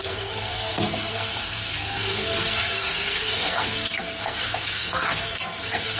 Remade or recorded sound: remade